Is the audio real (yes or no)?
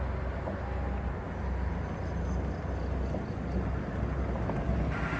yes